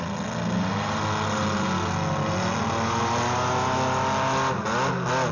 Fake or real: real